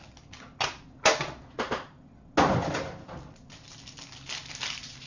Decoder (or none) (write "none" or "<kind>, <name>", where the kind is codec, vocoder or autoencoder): none